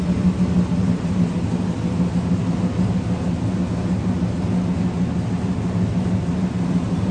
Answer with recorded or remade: recorded